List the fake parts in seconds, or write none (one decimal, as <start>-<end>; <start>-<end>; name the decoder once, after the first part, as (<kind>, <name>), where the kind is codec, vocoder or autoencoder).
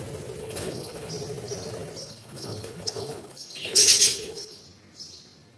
0.4-1.1 (codec, HILCodec); 2.0-4.6